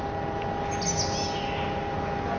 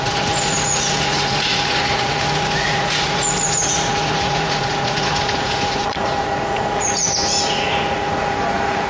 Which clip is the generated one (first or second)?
second